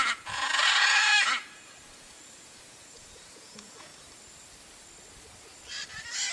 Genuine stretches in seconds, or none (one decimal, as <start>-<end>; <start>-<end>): 3.9-6.3